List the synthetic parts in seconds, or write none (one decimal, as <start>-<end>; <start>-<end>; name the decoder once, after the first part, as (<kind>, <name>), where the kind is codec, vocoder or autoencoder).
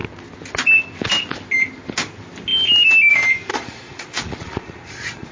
3.5-5.3 (vocoder, Vocos)